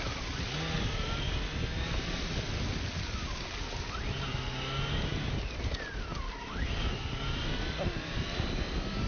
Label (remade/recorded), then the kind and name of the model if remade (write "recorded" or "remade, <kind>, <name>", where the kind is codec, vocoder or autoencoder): recorded